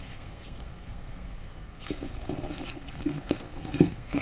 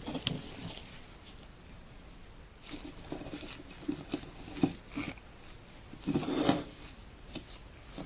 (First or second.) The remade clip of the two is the first